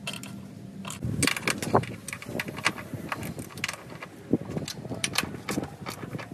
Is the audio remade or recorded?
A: recorded